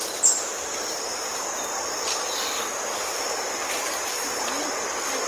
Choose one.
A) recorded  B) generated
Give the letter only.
A